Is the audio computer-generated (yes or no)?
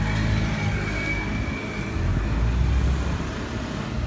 no